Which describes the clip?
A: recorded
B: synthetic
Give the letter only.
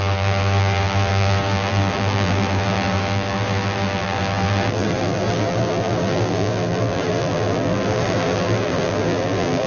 B